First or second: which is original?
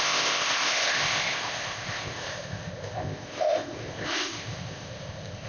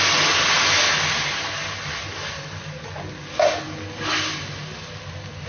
second